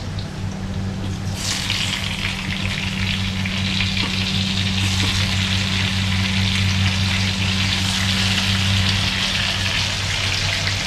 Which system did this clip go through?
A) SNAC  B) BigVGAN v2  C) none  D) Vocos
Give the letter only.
C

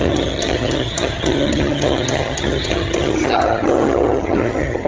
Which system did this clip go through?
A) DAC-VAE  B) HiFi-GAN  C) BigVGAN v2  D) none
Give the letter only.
B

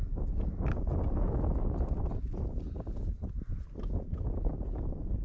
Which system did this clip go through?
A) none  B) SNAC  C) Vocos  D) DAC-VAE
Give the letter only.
A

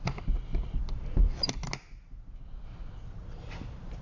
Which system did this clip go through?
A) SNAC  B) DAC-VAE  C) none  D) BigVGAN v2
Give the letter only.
C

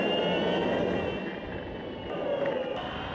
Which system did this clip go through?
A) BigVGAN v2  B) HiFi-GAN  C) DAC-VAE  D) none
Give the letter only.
D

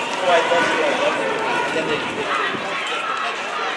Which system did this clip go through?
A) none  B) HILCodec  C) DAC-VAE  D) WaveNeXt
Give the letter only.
A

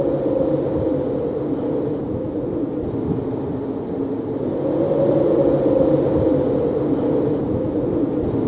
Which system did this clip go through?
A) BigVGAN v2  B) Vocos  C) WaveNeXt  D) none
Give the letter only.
D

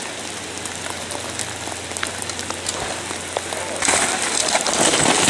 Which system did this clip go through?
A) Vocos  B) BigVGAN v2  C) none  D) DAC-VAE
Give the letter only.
C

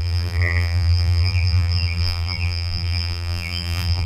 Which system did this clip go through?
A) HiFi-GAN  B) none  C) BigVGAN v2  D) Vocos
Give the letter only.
C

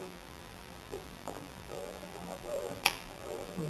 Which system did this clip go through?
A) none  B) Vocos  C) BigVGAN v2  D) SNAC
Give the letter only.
C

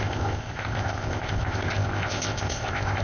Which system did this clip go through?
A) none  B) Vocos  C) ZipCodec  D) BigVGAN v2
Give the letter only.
C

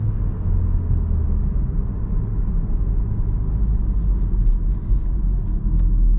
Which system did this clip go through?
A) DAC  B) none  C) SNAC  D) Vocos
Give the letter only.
B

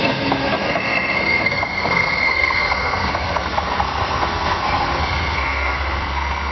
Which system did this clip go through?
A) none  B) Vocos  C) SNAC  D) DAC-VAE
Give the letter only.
C